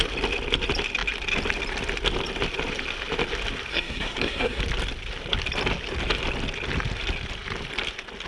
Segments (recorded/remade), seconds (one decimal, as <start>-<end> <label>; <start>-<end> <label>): 0.0-3.7 recorded; 3.7-4.6 remade; 4.6-8.3 recorded